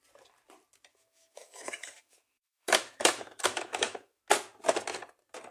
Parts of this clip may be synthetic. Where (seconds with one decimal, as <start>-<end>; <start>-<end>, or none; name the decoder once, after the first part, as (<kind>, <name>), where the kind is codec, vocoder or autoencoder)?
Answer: 0.9-4.2 (autoencoder, DAC-VAE)